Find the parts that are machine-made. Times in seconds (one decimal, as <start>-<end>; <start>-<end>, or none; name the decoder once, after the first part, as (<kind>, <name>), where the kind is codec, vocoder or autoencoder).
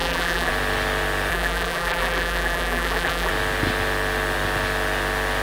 0.0-0.5 (vocoder, BigVGAN v2); 1.3-3.3